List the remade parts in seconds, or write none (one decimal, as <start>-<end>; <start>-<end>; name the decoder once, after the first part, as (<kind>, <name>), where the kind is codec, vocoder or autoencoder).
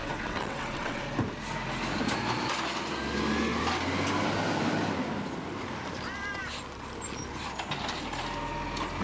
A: 0.0-1.0 (vocoder, WaveNeXt)